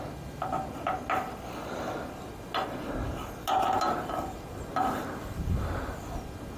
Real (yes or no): yes